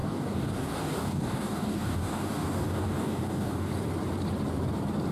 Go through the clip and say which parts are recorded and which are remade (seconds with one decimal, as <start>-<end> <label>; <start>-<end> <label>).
0.0-3.7 remade; 3.7-5.1 recorded